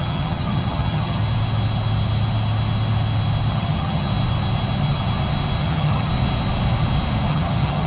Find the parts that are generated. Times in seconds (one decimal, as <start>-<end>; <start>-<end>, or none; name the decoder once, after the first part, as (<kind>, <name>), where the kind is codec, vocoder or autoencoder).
0.0-1.2 (vocoder, HiFi-GAN); 3.5-4.1; 5.6-6.1; 7.3-7.9